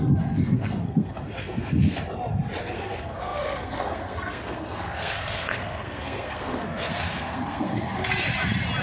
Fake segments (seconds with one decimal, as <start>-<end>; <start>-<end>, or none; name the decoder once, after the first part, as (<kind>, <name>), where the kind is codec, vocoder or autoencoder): 0.0-2.0 (codec, SNAC); 2.6-8.0